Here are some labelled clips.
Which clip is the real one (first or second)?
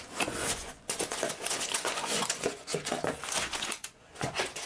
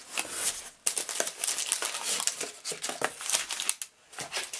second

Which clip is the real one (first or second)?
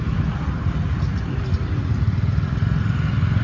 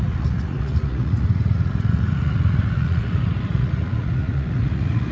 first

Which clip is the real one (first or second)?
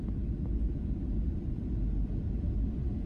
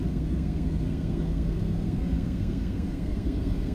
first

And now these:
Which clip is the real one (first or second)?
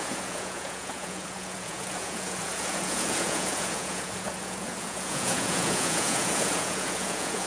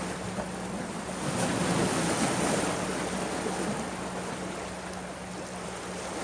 second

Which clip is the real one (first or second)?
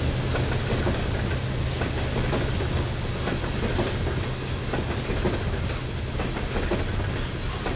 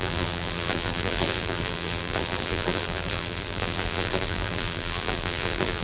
first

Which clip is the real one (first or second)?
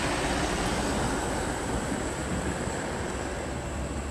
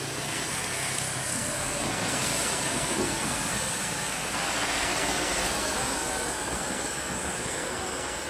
first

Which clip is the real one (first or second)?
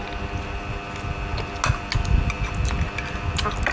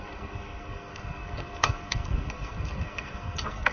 first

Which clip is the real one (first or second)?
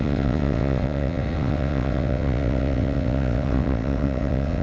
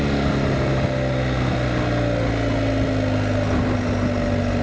second